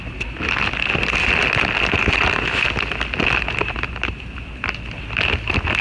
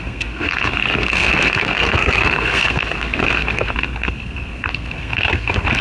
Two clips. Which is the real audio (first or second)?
first